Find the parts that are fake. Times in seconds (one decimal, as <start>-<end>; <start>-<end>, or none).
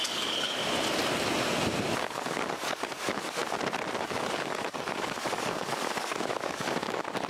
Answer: 0.0-0.6; 2.0-3.4; 4.0-7.3